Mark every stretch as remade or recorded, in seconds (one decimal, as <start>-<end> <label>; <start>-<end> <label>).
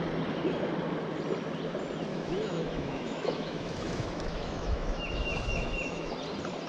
0.0-2.1 recorded; 2.1-6.1 remade; 6.1-6.7 recorded